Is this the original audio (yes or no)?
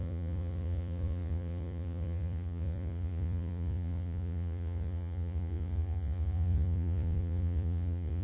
no